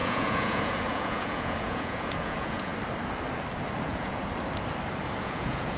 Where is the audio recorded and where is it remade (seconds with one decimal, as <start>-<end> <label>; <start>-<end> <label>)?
0.0-2.7 remade; 2.7-3.8 recorded; 3.8-4.2 remade; 4.2-5.2 recorded; 5.2-5.8 remade